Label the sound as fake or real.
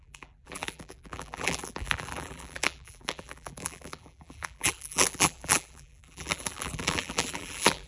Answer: fake